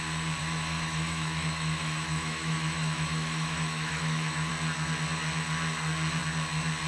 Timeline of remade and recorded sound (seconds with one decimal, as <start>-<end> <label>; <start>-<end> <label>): 0.0-0.4 recorded; 0.4-4.5 remade; 4.5-6.9 recorded